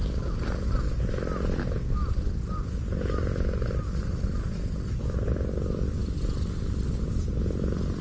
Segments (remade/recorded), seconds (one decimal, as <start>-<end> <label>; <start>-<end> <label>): 0.0-8.0 recorded